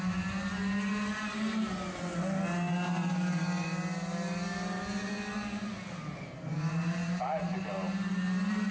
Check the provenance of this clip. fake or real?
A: real